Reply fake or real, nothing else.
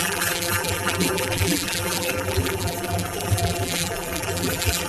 fake